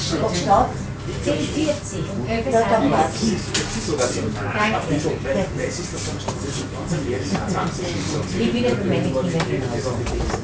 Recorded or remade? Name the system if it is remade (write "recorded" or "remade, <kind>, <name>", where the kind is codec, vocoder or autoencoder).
recorded